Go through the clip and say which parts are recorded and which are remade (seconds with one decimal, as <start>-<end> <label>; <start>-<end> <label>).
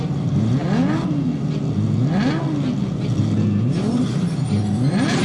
0.0-0.6 remade; 0.6-3.7 recorded; 3.7-5.2 remade